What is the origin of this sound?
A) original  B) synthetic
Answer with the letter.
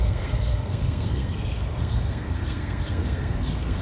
B